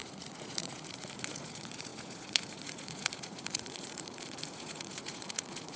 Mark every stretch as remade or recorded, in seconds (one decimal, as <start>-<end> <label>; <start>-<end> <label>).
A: 0.0-5.8 remade